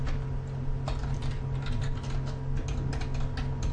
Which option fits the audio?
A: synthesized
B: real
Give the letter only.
B